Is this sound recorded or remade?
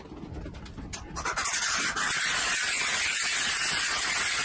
recorded